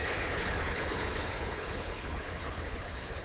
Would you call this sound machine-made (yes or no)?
yes